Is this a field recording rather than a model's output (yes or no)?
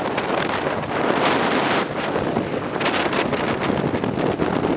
yes